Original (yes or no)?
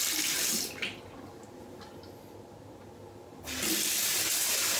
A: yes